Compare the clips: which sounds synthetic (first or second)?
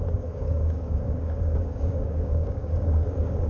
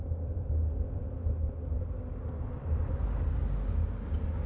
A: first